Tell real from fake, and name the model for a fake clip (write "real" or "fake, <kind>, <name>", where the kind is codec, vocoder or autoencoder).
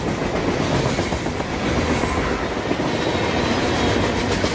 real